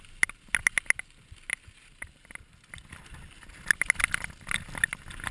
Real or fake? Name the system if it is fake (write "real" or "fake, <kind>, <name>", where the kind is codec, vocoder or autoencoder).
real